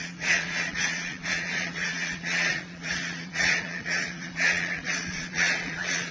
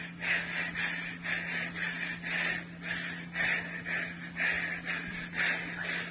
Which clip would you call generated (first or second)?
first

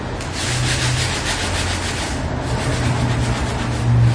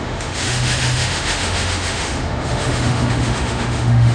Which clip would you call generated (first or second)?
second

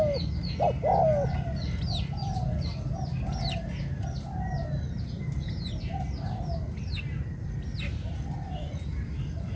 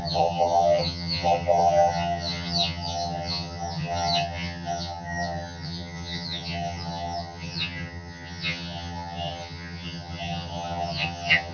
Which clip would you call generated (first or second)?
second